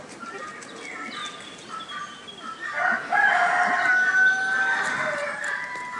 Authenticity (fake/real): real